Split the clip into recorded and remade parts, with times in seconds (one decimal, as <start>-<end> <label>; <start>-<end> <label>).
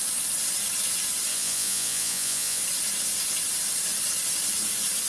0.0-1.3 recorded; 1.3-2.6 remade; 2.6-5.1 recorded